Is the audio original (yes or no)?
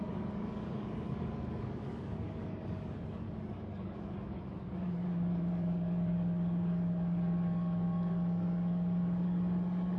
no